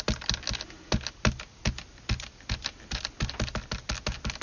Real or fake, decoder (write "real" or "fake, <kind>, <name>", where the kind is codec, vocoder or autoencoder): real